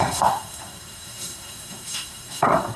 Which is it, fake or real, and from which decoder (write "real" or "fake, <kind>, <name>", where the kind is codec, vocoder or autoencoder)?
fake, codec, SNAC